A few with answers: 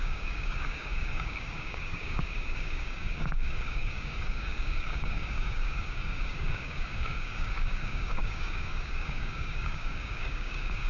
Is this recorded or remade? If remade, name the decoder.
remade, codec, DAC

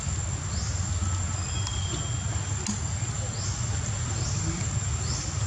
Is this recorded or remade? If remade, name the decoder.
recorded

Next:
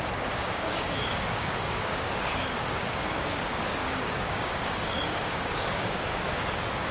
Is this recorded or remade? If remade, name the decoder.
remade, codec, DAC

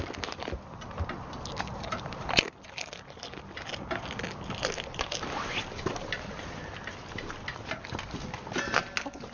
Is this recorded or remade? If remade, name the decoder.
recorded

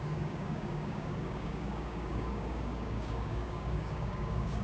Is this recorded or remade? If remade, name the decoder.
remade, codec, DAC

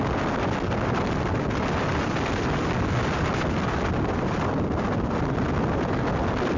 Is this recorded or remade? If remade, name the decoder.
recorded